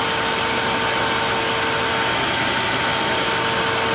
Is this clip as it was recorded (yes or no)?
yes